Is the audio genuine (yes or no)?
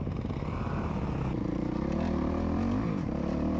yes